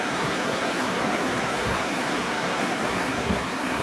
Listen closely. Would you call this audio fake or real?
fake